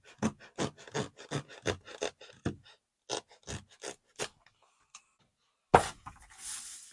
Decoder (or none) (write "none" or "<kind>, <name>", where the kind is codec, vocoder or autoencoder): none